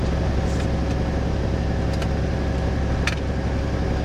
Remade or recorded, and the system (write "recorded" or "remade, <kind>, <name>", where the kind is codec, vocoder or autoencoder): recorded